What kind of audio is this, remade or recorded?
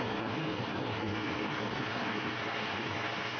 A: remade